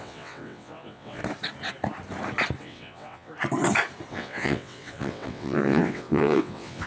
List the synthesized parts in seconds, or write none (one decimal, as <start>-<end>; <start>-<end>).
0.0-1.2; 2.6-3.3; 4.1-6.9